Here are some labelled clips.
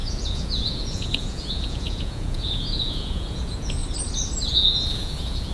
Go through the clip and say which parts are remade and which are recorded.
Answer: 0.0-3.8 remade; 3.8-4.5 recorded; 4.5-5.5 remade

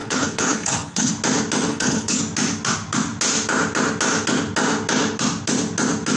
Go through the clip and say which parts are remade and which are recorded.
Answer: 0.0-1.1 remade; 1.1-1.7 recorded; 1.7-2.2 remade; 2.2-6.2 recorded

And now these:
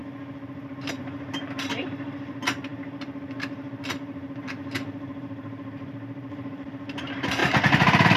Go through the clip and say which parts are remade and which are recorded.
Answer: 0.0-0.7 recorded; 0.7-8.2 remade

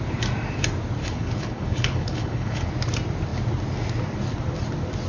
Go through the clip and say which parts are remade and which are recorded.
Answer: 0.0-1.0 recorded; 1.0-2.7 remade; 2.7-5.1 recorded